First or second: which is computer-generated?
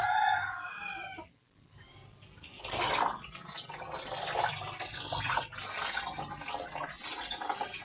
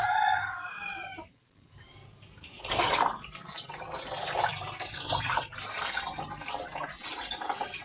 second